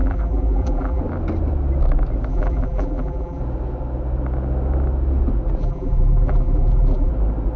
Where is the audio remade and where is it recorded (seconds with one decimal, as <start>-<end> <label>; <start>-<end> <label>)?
0.0-1.0 remade; 1.0-2.3 recorded; 2.3-3.4 remade; 3.4-5.6 recorded; 5.6-7.1 remade; 7.1-7.6 recorded

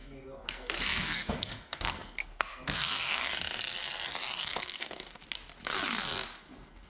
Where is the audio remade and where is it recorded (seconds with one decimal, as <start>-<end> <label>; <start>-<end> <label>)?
0.0-3.2 remade; 3.2-4.5 recorded; 4.5-5.2 remade; 5.2-6.4 recorded; 6.4-6.9 remade

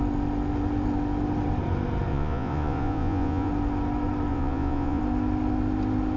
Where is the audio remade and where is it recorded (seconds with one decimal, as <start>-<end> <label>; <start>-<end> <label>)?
0.0-2.1 recorded; 2.1-3.5 remade; 3.5-4.3 recorded; 4.3-5.0 remade; 5.0-6.2 recorded

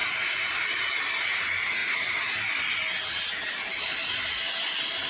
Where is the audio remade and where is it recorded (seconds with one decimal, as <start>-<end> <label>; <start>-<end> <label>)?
0.0-5.1 recorded